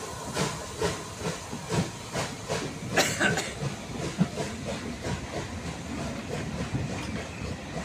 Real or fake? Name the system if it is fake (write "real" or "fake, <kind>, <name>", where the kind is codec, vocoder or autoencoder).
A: real